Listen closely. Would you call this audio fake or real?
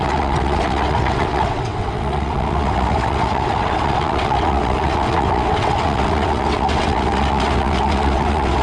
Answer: fake